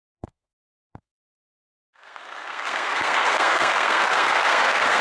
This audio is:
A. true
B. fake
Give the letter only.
B